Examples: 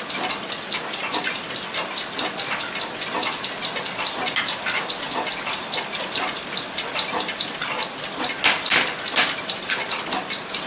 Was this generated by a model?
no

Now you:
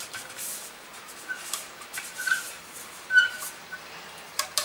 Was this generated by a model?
yes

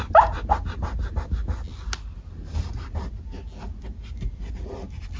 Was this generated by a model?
no